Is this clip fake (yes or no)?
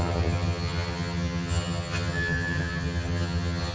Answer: yes